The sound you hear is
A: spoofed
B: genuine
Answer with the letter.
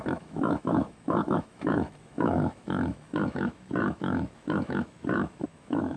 A